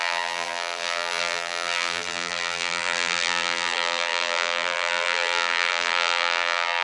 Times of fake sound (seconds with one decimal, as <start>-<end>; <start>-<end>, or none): 0.0-6.8